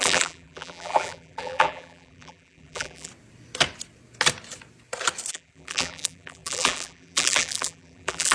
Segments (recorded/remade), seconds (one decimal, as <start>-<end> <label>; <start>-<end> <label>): 0.0-3.1 remade; 3.1-5.3 recorded; 5.3-8.3 remade